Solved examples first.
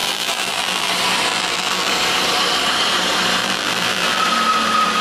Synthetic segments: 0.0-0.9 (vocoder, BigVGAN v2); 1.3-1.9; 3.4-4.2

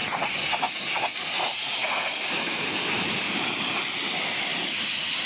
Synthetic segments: 4.5-5.3 (vocoder, BigVGAN v2)

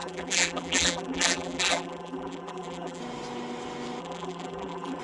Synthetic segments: 0.0-3.0 (vocoder, BigVGAN v2); 4.0-5.0

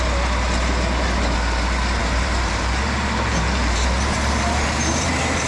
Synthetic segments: 2.0-5.5 (vocoder, BigVGAN v2)

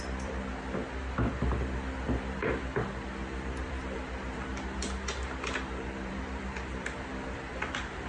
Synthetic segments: 0.0-0.5 (vocoder, BigVGAN v2); 3.6-4.5; 6.1-8.1

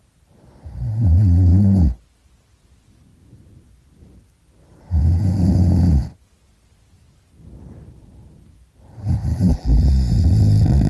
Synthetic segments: 9.3-9.9 (vocoder, BigVGAN v2)

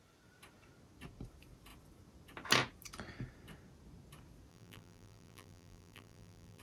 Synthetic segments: 4.5-6.6 (vocoder, BigVGAN v2)

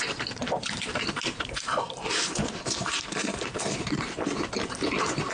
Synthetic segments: 0.0-5.3 (vocoder, BigVGAN v2)